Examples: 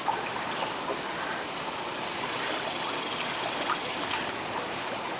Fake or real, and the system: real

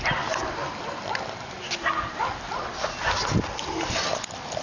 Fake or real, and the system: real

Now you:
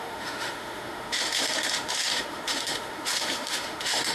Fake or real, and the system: fake, autoencoder, DAC-VAE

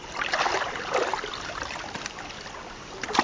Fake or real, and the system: real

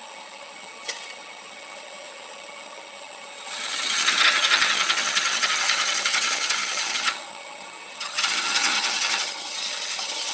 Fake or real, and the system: fake, vocoder, HiFi-GAN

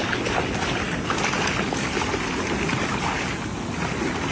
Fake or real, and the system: real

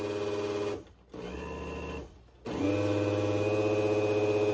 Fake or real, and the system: real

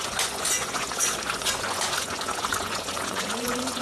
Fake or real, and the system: fake, vocoder, Vocos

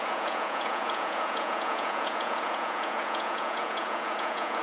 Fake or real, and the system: fake, vocoder, Vocos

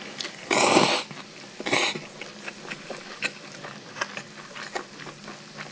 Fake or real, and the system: real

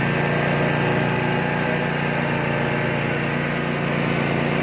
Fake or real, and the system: real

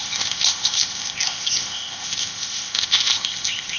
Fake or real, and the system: fake, codec, ZipCodec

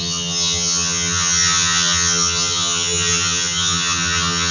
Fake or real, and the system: fake, vocoder, HiFi-GAN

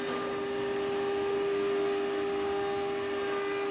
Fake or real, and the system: real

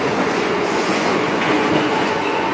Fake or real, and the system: fake, vocoder, Vocos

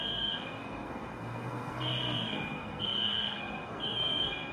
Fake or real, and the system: fake, codec, SNAC